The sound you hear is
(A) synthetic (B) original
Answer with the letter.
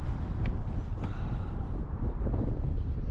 B